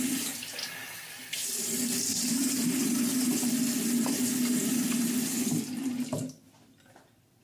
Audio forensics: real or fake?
real